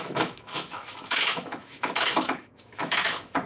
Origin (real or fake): fake